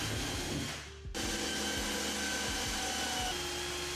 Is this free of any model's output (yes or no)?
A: yes